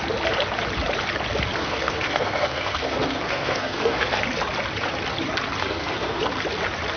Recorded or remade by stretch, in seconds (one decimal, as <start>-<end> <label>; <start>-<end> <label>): 0.0-1.6 recorded; 1.6-4.2 remade; 4.2-5.6 recorded; 5.6-6.2 remade; 6.2-7.0 recorded